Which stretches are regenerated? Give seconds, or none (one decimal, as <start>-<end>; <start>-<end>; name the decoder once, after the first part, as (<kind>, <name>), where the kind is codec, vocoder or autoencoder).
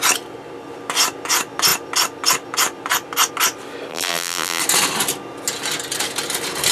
3.9-4.6 (vocoder, BigVGAN v2)